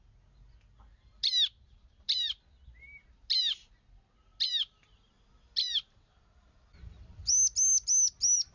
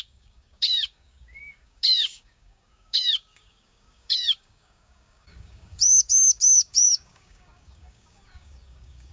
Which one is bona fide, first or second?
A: first